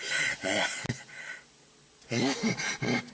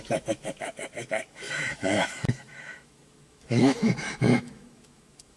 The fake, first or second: second